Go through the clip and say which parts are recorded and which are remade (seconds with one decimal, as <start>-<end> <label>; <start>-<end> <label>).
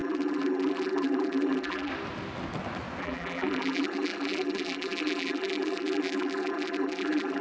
0.0-1.9 remade; 1.9-3.0 recorded; 3.0-7.4 remade